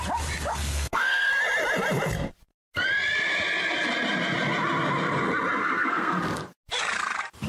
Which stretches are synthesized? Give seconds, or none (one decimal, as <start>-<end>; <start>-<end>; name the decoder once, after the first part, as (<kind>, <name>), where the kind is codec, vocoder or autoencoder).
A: 0.5-1.3 (codec, SNAC); 5.6-6.2